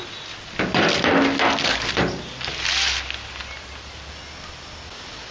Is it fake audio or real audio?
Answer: real